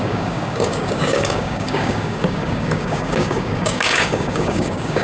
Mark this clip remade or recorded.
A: remade